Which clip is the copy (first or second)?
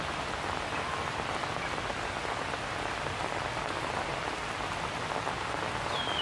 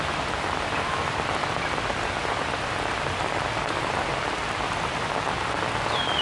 second